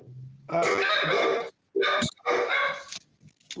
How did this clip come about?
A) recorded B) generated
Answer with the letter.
A